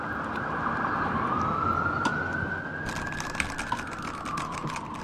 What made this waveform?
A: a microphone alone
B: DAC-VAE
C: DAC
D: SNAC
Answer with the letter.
A